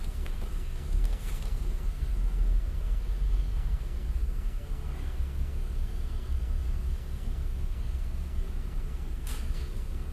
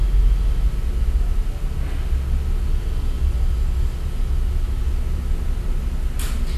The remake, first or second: first